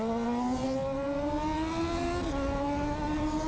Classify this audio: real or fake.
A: real